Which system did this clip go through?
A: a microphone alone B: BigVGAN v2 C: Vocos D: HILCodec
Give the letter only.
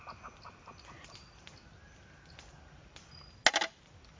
A